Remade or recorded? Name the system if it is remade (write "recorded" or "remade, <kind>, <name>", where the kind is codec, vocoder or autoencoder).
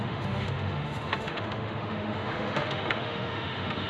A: remade, autoencoder, DAC-VAE